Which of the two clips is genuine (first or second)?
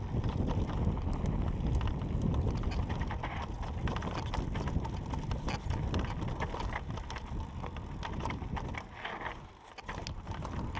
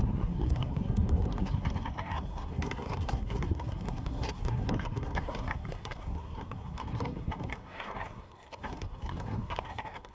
first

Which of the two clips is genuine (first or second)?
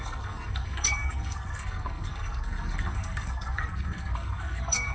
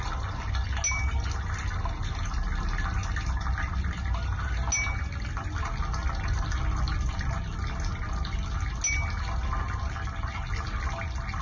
second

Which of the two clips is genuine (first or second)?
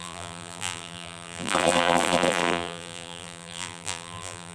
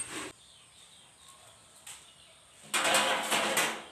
second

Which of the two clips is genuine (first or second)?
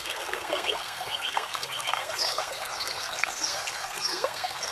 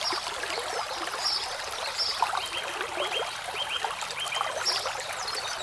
second